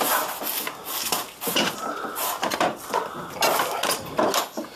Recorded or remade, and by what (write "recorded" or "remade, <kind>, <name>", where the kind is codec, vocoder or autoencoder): recorded